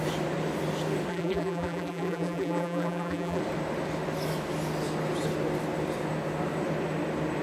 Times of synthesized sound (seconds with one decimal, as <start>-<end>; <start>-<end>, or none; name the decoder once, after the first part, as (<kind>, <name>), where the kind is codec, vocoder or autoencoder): 1.1-3.4 (vocoder, BigVGAN v2)